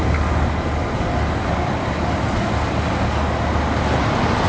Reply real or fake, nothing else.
real